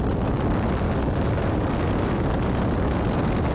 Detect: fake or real real